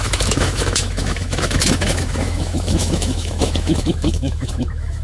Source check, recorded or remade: remade